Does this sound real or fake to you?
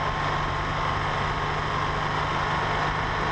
real